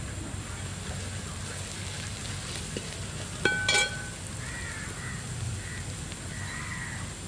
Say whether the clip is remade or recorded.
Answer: recorded